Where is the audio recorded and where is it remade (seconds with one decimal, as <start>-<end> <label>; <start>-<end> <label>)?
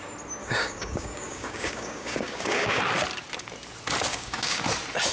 0.0-0.4 recorded; 0.4-2.8 remade; 2.8-4.1 recorded; 4.1-4.6 remade; 4.6-5.1 recorded